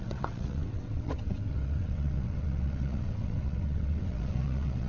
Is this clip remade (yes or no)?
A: yes